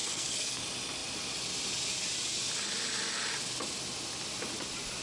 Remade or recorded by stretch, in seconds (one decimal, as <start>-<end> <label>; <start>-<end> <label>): 0.0-0.6 remade; 0.6-5.0 recorded

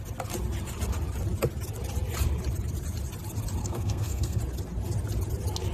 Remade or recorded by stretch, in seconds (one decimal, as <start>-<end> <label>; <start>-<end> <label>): 0.0-3.6 recorded; 3.6-4.4 remade; 4.4-5.7 recorded